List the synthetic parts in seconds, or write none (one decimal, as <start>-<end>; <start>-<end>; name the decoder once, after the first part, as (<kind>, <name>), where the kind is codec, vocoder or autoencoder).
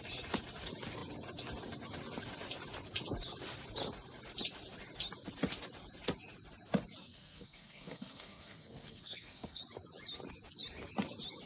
7.0-9.6 (codec, SNAC)